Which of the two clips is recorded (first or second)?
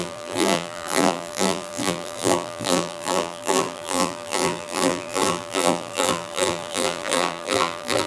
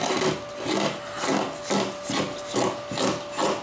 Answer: second